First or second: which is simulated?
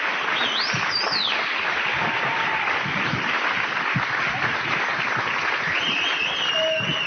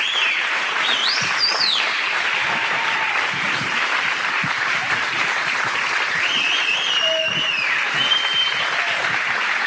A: second